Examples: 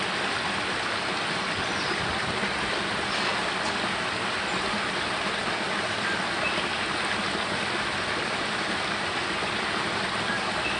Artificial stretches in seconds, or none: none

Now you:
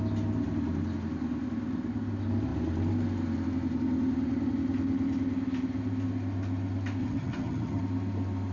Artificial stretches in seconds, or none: 7.0-7.8 (vocoder, HiFi-GAN)

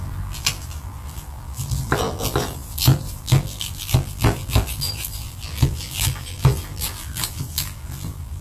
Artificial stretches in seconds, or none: 0.0-8.4 (vocoder, BigVGAN v2)